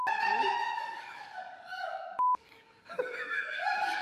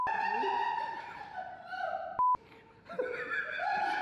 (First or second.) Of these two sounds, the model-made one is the first